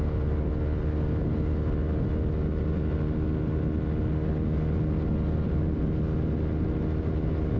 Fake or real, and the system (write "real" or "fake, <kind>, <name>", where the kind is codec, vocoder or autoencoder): real